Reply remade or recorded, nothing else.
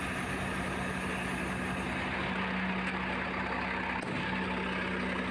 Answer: recorded